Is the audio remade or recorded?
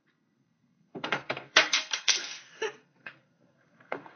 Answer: remade